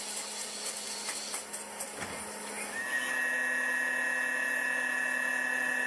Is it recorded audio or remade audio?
recorded